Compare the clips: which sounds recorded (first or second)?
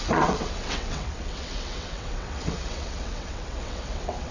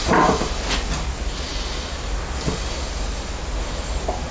second